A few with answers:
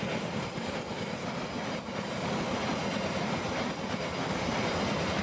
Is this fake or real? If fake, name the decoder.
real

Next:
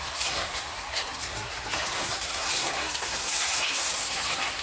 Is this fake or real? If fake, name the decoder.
fake, codec, SNAC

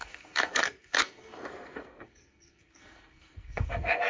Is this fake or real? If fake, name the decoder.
fake, codec, SNAC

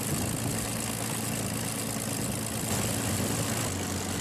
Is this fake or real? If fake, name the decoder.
real